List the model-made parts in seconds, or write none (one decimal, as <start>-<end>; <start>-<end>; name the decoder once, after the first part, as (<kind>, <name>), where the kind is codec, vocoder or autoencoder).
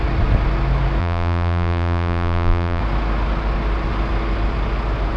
1.0-2.8 (vocoder, BigVGAN v2)